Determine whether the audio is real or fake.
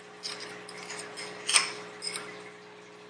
real